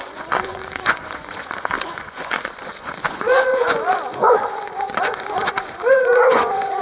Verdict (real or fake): fake